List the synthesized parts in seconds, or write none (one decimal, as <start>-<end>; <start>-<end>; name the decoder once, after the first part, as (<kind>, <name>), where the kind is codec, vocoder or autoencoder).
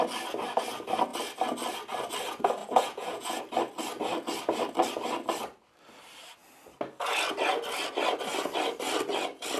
2.6-3.4 (vocoder, Vocos)